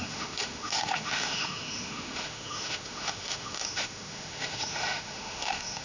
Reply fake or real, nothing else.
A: fake